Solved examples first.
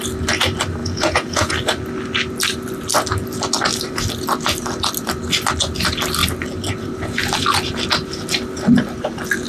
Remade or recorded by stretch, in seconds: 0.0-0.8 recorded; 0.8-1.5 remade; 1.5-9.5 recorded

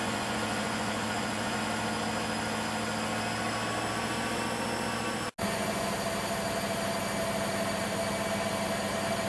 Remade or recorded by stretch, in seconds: 0.0-1.6 remade; 1.6-5.4 recorded; 5.4-5.9 remade; 5.9-9.3 recorded